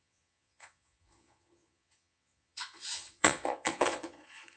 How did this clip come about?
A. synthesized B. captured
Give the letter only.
A